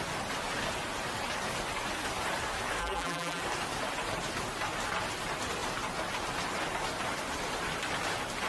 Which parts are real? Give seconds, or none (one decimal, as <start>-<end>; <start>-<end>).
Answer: 0.0-2.8; 3.4-8.5